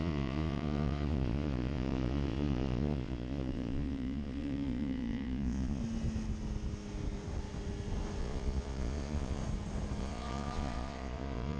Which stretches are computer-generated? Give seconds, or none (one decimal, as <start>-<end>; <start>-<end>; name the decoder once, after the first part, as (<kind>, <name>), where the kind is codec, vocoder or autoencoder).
0.0-5.8 (vocoder, Vocos); 8.2-9.4; 10.0-11.6